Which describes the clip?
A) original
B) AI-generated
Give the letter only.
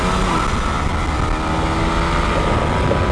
A